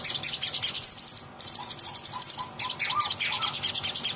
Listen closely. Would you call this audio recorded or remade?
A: recorded